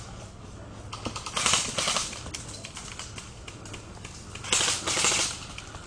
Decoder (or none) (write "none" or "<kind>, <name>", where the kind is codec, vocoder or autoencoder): none